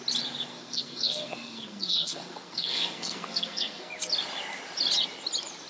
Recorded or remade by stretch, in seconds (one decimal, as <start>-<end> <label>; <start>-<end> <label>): 0.0-0.5 recorded; 0.5-3.9 remade; 3.9-5.7 recorded

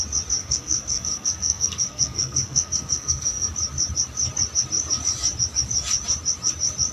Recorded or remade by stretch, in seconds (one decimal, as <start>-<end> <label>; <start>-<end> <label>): 0.0-0.4 recorded; 0.4-3.5 remade; 3.5-6.9 recorded

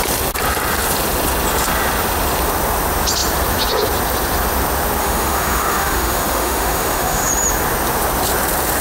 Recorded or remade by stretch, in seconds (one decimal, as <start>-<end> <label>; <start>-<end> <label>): 0.0-5.0 recorded; 5.0-7.3 remade; 7.3-8.8 recorded

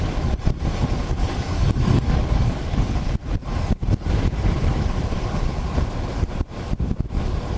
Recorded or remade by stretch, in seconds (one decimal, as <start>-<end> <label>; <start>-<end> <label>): 0.0-1.2 recorded; 1.2-3.1 remade; 3.1-7.6 recorded

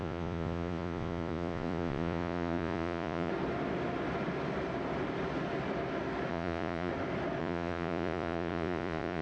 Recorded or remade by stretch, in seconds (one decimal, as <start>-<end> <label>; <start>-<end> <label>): 0.0-3.3 remade; 3.3-6.3 recorded; 6.3-6.9 remade; 6.9-7.4 recorded; 7.4-9.2 remade